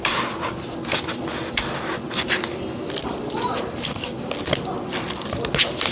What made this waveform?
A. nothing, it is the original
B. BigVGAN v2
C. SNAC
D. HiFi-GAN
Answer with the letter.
A